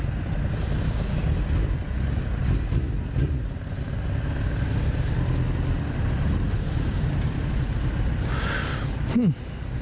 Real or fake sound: real